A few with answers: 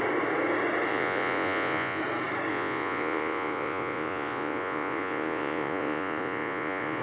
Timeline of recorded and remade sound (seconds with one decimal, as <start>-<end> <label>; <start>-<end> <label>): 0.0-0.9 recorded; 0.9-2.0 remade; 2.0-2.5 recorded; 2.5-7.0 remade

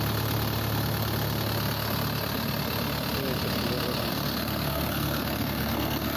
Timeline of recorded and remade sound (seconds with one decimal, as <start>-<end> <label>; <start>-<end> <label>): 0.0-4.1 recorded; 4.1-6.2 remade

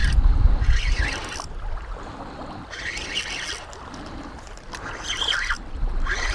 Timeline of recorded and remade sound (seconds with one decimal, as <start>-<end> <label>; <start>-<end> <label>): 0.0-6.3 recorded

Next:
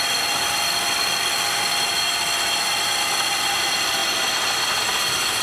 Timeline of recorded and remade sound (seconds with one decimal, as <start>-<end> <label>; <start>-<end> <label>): 0.0-5.4 recorded

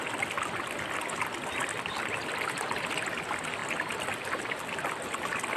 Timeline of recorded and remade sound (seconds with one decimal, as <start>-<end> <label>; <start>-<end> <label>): 0.0-3.6 recorded; 3.6-5.6 remade

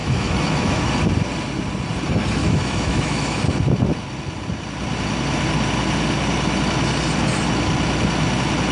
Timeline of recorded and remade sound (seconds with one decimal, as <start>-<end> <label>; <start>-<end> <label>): 0.0-0.9 remade; 0.9-2.4 recorded; 2.4-3.4 remade; 3.4-8.7 recorded

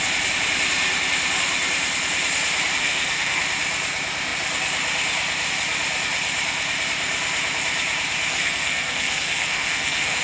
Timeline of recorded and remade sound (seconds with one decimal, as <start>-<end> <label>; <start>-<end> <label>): 0.0-2.8 recorded; 2.8-3.4 remade; 3.4-8.3 recorded; 8.3-10.2 remade